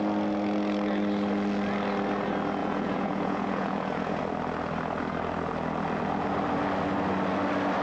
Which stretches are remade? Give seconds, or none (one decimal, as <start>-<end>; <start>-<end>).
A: 2.6-4.2